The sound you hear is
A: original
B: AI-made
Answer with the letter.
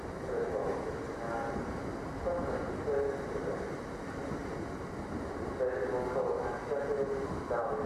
A